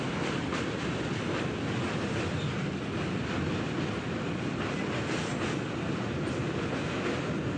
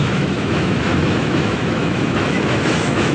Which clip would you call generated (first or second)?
second